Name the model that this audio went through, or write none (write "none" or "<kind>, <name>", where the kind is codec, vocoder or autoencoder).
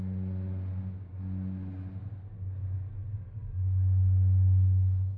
none